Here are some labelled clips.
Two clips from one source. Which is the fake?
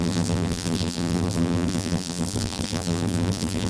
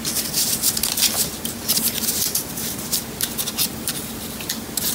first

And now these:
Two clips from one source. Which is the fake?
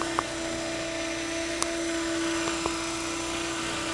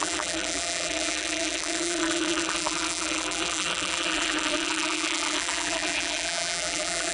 second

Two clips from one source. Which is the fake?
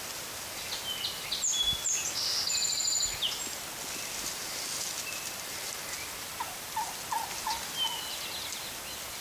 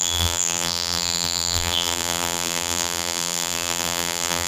second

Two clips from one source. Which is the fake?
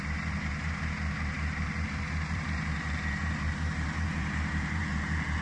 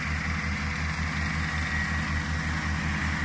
first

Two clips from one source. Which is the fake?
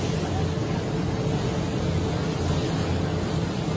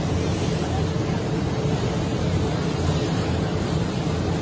second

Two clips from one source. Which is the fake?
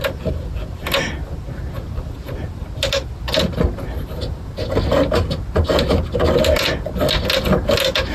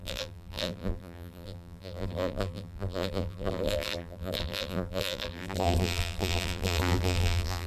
second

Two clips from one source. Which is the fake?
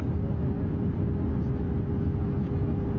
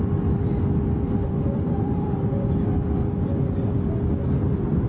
second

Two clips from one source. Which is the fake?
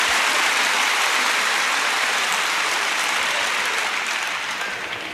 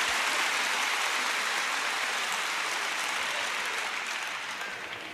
first